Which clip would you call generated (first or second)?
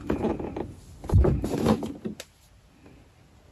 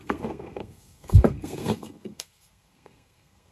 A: second